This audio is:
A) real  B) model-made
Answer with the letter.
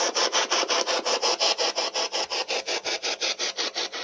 A